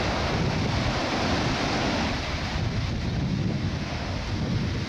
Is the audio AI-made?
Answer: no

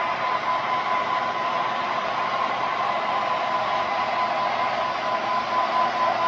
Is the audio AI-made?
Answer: no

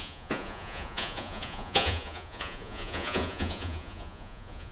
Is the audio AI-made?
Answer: yes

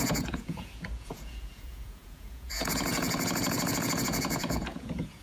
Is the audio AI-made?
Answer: yes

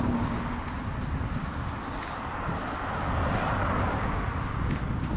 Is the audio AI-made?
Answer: no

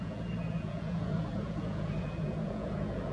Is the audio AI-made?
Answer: yes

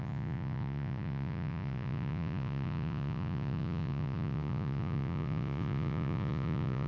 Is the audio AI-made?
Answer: yes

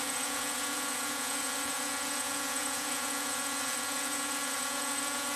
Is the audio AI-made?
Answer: yes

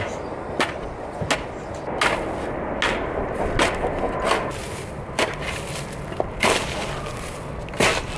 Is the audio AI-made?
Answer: no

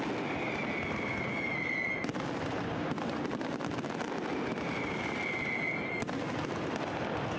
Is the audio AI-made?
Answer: no